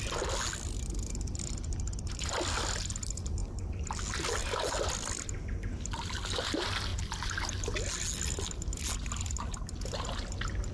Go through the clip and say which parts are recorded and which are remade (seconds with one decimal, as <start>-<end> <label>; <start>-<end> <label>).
0.0-10.7 recorded